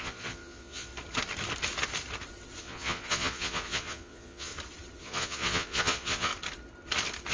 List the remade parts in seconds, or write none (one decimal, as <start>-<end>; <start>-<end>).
0.0-0.9; 2.6-4.5; 5.0-6.3

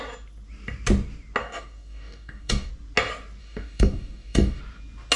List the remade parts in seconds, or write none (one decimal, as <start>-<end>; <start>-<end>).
1.4-2.7; 3.4-4.6